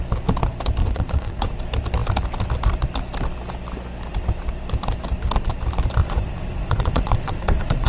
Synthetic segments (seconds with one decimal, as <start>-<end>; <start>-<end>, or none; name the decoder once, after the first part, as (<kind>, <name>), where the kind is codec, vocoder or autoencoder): 0.8-1.6 (vocoder, Vocos); 6.0-7.9